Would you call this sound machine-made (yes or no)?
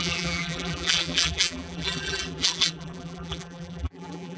yes